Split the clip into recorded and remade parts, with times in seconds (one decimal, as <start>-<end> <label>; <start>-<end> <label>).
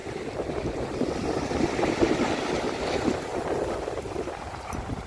0.0-1.8 recorded; 1.8-3.3 remade; 3.3-4.3 recorded; 4.3-5.1 remade